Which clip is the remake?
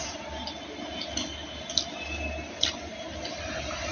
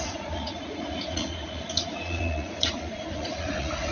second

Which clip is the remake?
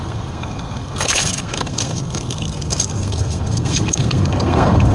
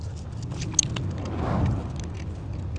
first